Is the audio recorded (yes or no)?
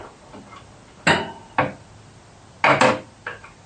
yes